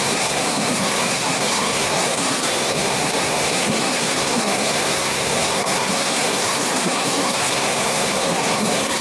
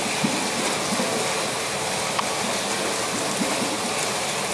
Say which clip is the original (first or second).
second